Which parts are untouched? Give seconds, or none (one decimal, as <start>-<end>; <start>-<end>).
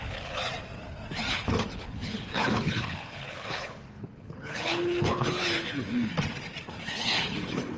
0.4-1.3; 6.1-6.8